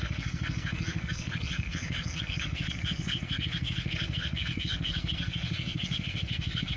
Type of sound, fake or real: fake